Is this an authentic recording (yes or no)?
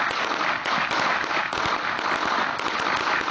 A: yes